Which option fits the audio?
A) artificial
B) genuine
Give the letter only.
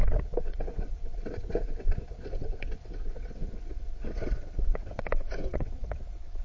A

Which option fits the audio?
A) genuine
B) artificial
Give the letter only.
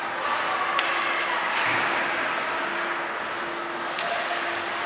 A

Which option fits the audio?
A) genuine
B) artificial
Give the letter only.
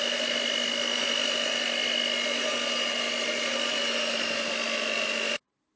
A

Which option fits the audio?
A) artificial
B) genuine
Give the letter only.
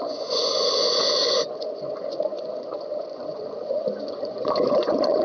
A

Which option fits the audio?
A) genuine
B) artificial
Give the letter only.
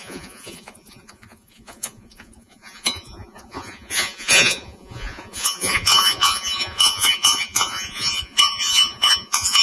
B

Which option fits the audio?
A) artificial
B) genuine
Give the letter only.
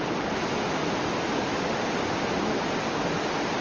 B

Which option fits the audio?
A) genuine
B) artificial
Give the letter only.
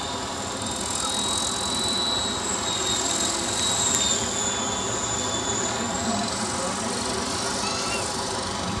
A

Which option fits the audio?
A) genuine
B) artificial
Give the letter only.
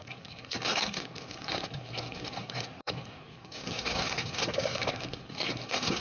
B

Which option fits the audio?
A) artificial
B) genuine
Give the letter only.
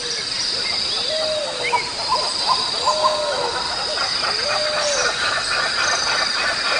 B